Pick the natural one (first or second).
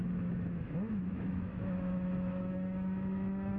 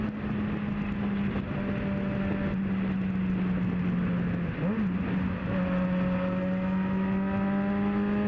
second